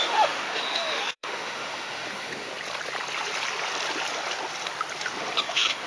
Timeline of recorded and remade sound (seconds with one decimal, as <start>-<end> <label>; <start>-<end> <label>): 0.0-2.5 remade; 2.5-5.4 recorded; 5.4-5.9 remade